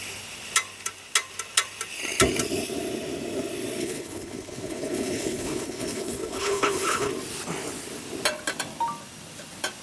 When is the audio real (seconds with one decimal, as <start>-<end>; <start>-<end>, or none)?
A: 0.0-3.8; 7.1-9.8